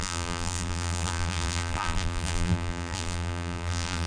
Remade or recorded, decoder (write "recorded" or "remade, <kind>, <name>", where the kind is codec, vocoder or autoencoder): remade, vocoder, BigVGAN v2